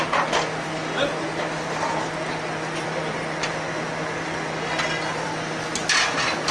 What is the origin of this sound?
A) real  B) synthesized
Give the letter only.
A